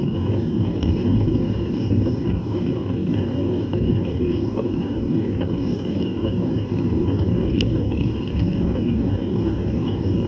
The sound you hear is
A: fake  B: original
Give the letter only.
A